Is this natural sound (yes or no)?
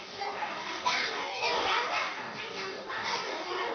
no